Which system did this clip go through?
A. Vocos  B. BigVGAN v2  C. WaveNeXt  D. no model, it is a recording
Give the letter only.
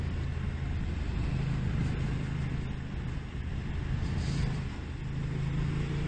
D